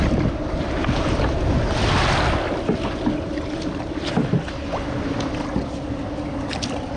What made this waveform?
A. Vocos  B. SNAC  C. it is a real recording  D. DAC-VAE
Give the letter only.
C